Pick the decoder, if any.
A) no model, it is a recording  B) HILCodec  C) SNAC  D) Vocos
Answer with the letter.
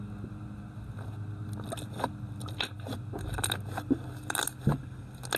A